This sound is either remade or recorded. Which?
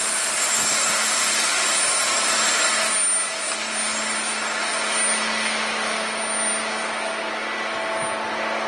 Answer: recorded